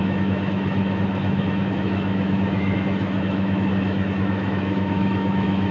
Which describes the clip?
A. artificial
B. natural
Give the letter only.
A